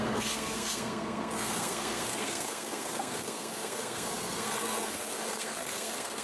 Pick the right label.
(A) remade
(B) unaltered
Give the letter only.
A